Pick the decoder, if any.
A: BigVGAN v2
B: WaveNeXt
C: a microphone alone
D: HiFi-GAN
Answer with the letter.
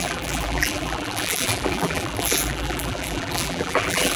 A